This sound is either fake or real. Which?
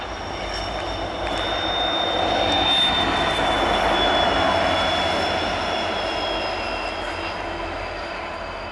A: real